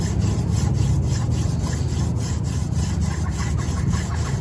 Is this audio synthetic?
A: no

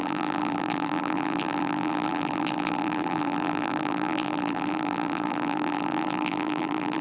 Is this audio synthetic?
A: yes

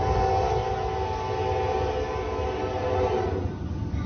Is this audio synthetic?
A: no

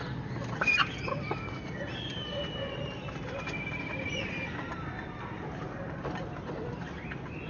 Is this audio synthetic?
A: no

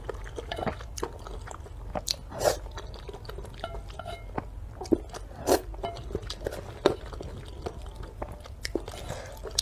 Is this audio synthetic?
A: no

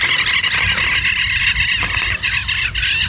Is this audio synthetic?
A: no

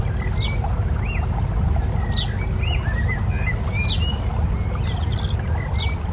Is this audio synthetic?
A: no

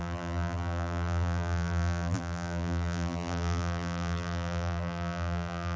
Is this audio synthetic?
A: yes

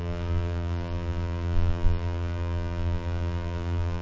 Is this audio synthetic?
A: yes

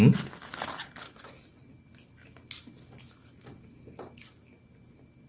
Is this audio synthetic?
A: no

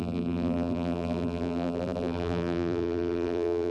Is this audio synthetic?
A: yes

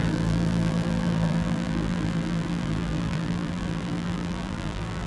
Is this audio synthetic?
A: yes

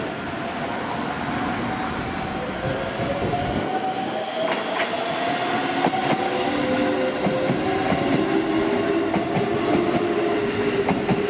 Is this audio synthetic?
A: no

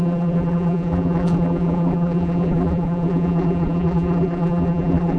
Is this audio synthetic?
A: yes